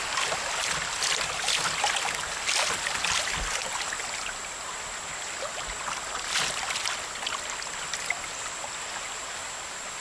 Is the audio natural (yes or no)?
yes